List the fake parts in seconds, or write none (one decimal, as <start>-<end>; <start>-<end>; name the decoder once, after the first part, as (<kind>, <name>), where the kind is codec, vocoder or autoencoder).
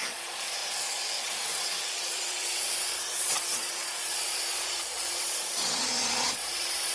0.0-6.9 (vocoder, Vocos)